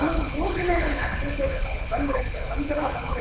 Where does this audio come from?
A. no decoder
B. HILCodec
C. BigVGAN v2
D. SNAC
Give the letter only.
B